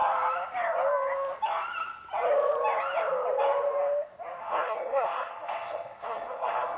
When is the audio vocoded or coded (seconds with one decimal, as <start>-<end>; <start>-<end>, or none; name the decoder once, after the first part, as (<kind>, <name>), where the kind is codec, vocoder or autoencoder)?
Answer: 4.4-6.8 (codec, SNAC)